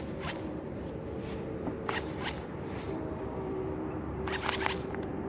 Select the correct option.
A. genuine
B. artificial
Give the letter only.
B